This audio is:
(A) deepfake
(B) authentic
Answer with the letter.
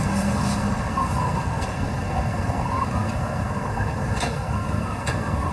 A